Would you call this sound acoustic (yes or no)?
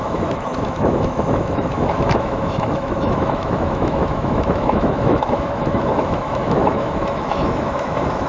no